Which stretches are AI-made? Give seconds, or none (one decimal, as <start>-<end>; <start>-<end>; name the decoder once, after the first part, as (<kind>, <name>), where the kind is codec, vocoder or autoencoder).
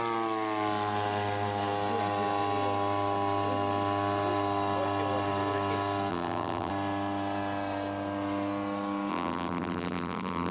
6.1-6.7 (vocoder, BigVGAN v2); 9.1-10.5